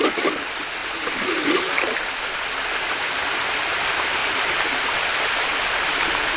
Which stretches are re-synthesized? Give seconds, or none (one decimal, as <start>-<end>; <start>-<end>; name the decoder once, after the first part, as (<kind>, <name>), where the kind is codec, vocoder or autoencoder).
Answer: none